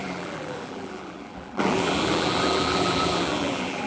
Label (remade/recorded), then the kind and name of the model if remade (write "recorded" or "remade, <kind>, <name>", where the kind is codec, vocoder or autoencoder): remade, vocoder, BigVGAN v2